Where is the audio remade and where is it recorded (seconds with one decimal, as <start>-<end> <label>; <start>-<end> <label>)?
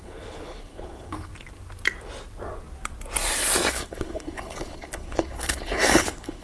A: 0.0-1.3 remade; 1.3-3.7 recorded; 3.7-6.4 remade